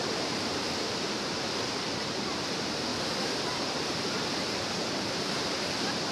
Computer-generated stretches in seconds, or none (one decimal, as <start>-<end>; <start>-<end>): 0.0-2.9; 4.7-6.1